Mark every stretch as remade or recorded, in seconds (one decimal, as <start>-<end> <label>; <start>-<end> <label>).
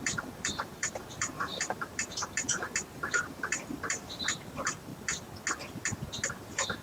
0.0-4.9 remade; 4.9-6.3 recorded; 6.3-6.8 remade